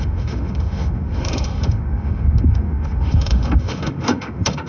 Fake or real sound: fake